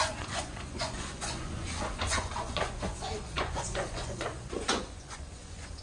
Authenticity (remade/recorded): remade